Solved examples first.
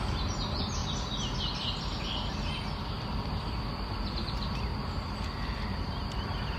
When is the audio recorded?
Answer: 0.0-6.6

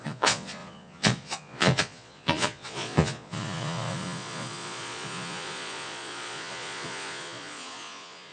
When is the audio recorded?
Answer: none

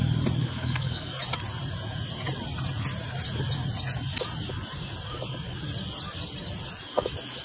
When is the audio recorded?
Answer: 0.0-0.4; 1.1-7.4

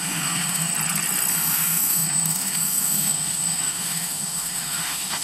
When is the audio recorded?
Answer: 0.7-1.3

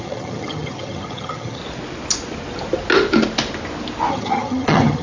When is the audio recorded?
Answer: 1.6-4.1

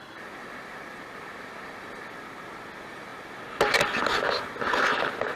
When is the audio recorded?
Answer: 0.0-5.4